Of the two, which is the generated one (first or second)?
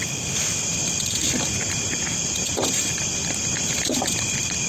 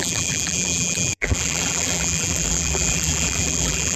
second